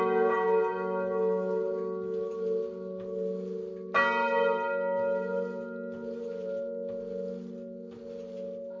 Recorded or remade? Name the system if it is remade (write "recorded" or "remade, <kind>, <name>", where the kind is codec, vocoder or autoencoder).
recorded